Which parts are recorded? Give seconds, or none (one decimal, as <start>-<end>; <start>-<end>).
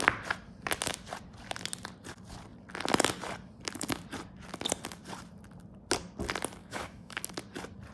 0.0-6.6; 7.2-7.9